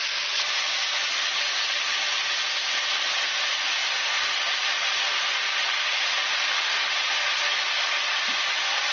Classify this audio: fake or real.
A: real